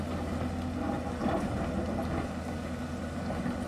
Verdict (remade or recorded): recorded